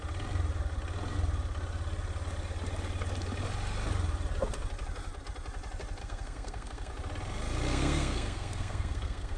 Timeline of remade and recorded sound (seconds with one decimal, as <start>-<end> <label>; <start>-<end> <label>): 0.0-6.0 recorded; 6.0-6.9 remade; 6.9-7.7 recorded; 7.7-9.4 remade